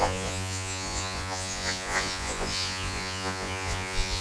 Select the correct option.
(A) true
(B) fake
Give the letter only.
B